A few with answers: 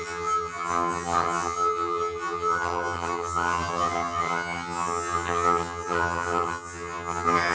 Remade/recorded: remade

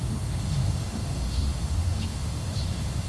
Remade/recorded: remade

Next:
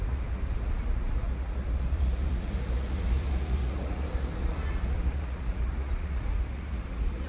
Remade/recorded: remade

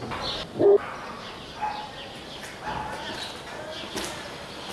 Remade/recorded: recorded